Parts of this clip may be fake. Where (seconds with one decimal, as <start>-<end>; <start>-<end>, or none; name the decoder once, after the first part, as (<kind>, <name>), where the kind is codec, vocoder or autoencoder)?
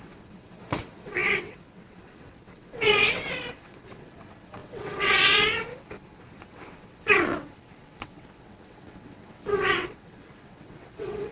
0.0-5.7 (vocoder, WaveNeXt); 6.2-11.3